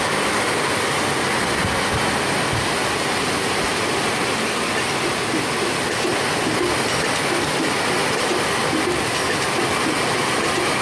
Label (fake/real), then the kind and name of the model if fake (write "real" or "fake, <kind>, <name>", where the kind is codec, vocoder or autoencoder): real